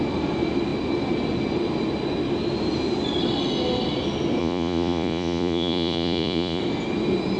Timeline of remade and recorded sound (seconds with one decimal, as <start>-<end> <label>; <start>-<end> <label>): 0.0-4.4 recorded; 4.4-6.6 remade; 6.6-7.4 recorded